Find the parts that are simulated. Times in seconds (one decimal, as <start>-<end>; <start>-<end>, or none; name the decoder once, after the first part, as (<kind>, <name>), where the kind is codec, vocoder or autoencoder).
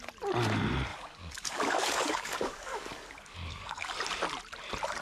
0.9-3.9 (codec, DAC)